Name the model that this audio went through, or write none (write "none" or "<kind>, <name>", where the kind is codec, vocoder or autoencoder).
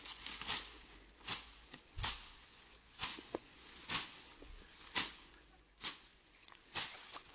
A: vocoder, Vocos